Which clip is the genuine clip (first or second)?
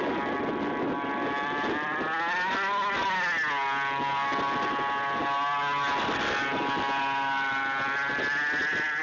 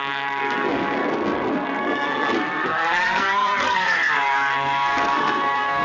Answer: first